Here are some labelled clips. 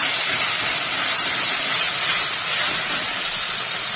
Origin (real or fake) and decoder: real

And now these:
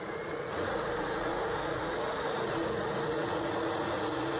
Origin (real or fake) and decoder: fake, vocoder, Vocos